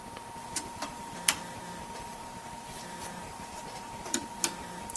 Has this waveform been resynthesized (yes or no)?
yes